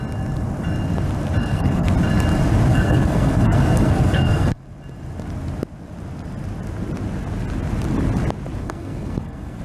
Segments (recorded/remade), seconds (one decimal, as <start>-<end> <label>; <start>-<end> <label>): 0.0-1.4 recorded; 1.4-1.9 remade; 1.9-2.7 recorded; 2.7-4.6 remade; 4.6-8.6 recorded; 8.6-9.6 remade